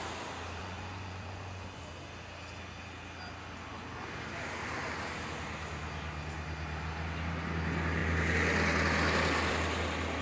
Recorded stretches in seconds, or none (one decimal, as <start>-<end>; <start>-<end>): 0.0-0.6; 1.8-10.2